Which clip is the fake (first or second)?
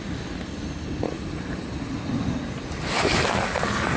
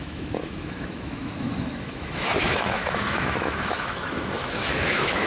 second